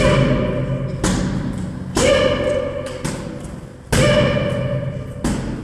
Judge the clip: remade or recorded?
recorded